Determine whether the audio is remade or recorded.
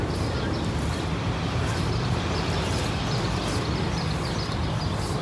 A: recorded